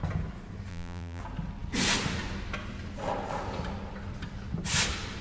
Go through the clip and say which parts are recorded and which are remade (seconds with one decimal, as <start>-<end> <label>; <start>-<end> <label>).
0.0-0.7 recorded; 0.7-1.2 remade; 1.2-5.2 recorded